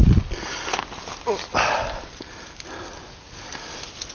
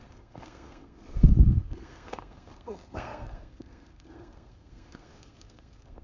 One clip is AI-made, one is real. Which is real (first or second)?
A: first